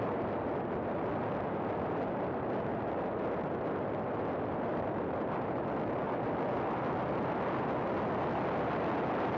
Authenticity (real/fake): real